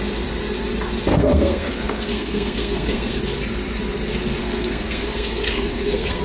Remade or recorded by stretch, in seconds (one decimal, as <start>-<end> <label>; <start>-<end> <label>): 0.0-1.1 recorded; 1.1-3.2 remade; 3.2-4.4 recorded; 4.4-6.2 remade

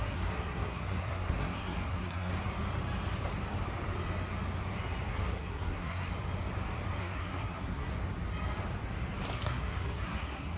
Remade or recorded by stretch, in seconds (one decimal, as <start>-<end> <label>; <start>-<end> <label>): 0.0-2.3 remade; 2.3-5.1 recorded; 5.1-6.1 remade; 6.1-7.0 recorded; 7.0-7.9 remade; 7.9-9.4 recorded; 9.4-10.6 remade

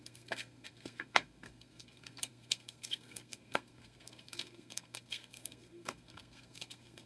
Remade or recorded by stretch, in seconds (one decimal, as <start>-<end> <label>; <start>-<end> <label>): 0.0-7.1 remade